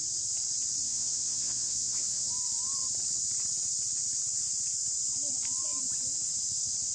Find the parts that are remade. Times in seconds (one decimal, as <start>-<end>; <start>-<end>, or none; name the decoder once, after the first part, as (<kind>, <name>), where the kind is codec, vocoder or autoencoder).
0.8-2.3 (vocoder, Vocos)